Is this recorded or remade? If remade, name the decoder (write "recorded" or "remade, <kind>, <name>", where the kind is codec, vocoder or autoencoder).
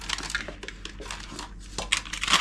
recorded